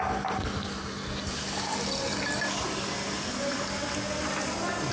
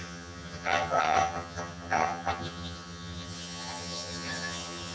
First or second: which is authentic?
first